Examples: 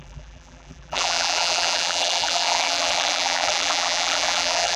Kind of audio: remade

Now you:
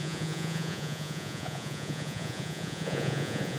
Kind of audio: remade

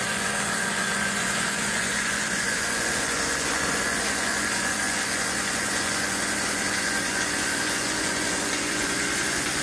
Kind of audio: remade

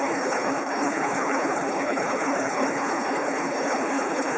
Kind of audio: remade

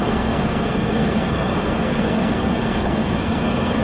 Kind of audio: remade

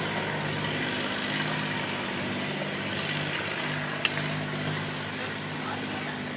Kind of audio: recorded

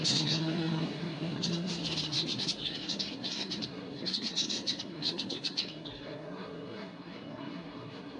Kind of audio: remade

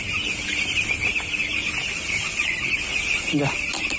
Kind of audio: recorded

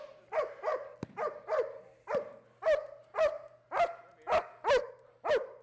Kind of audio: recorded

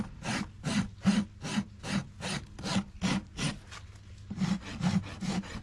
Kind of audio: recorded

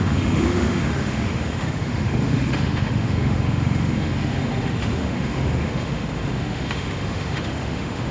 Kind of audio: remade